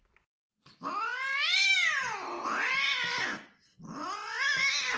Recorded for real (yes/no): yes